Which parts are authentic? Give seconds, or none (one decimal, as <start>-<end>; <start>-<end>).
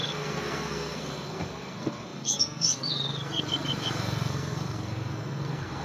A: none